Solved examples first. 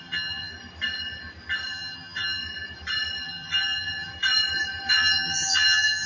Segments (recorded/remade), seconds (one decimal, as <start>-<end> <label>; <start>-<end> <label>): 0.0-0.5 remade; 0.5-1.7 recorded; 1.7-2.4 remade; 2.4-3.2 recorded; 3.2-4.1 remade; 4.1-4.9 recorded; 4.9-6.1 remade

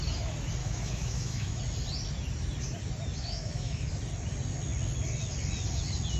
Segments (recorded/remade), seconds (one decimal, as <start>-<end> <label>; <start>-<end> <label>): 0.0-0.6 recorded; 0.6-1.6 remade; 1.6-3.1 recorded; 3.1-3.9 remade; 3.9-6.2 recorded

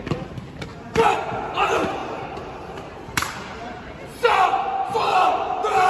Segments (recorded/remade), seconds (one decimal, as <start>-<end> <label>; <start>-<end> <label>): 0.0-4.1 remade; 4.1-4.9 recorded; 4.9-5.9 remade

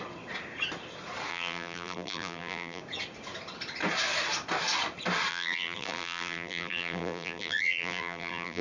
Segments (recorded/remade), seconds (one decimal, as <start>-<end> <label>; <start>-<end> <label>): 0.0-1.3 recorded; 1.3-2.8 remade; 2.8-5.3 recorded; 5.3-8.6 remade

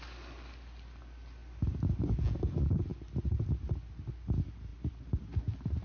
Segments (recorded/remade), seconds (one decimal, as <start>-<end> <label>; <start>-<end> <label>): 0.0-5.8 recorded

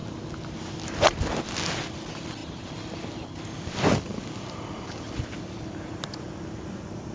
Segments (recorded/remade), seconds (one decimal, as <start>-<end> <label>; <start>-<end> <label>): 0.0-7.1 recorded

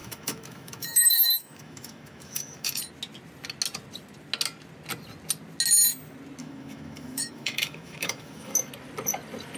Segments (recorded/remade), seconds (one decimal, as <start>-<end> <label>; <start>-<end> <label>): 0.0-2.8 remade; 2.8-6.4 recorded; 6.4-8.7 remade; 8.7-9.6 recorded

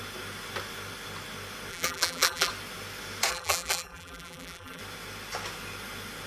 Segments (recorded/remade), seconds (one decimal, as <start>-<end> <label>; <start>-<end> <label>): 0.0-1.7 recorded; 1.7-2.5 remade; 2.5-3.3 recorded; 3.3-4.8 remade; 4.8-6.3 recorded